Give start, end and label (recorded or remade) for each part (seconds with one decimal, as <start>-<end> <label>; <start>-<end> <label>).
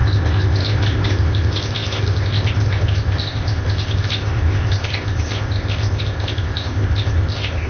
0.0-7.7 remade